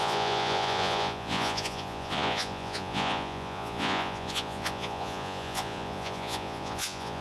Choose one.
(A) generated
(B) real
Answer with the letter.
A